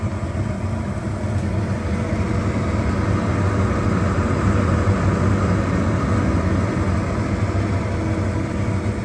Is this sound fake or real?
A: real